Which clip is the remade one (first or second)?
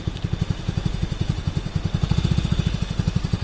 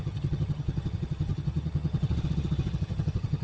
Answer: second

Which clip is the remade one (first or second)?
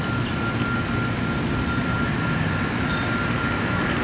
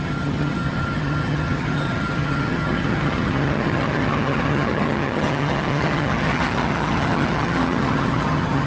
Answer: second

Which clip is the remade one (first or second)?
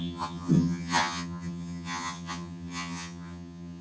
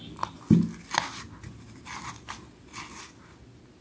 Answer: first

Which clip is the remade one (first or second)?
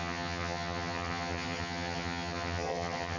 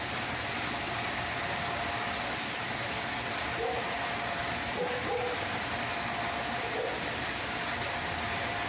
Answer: first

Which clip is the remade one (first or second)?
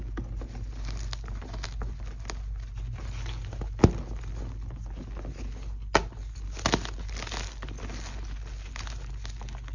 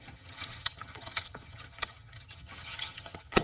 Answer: second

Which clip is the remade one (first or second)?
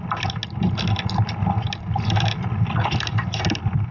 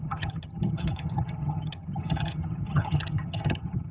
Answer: second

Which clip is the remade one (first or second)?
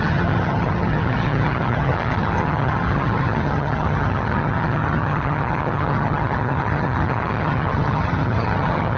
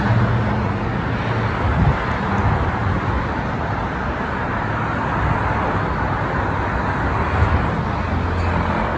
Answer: first